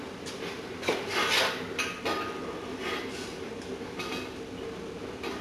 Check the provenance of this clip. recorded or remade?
recorded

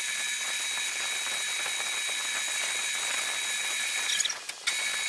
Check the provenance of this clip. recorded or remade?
recorded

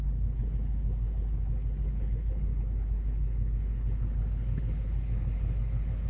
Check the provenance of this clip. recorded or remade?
remade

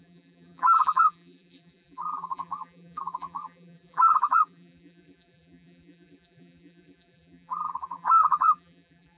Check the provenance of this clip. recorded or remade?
remade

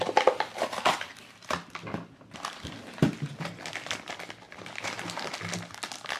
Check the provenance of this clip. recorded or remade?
recorded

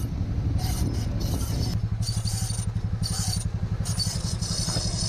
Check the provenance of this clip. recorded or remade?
recorded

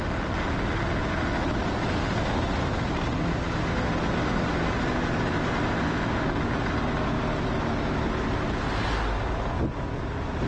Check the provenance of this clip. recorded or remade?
recorded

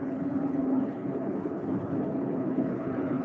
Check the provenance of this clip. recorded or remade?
remade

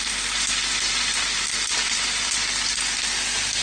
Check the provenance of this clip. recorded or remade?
recorded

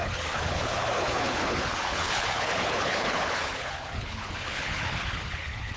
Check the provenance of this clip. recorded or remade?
remade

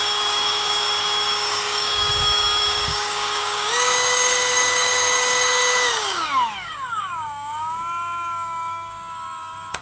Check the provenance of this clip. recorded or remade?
remade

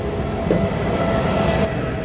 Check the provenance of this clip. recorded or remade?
recorded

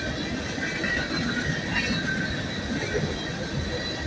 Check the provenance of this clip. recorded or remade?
recorded